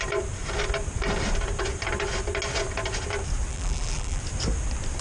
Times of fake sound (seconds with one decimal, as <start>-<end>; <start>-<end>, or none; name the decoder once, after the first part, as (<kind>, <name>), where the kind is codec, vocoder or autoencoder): 3.5-4.2 (vocoder, BigVGAN v2)